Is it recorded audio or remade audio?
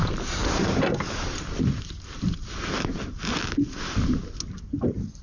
recorded